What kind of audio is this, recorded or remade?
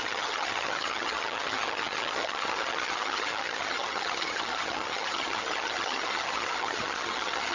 remade